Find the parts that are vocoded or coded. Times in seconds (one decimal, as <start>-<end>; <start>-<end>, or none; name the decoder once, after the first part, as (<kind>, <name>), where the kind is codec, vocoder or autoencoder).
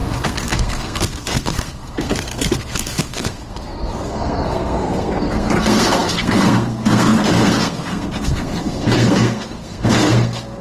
0.0-10.6 (codec, SNAC)